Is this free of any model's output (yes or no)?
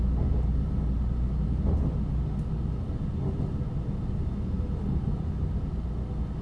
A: yes